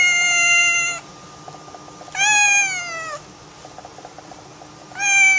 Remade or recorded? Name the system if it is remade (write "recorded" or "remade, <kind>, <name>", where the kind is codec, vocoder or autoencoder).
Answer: recorded